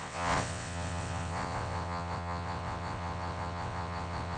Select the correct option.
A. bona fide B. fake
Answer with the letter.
B